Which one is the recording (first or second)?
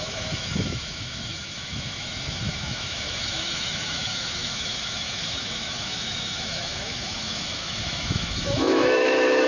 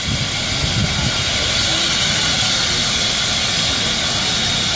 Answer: second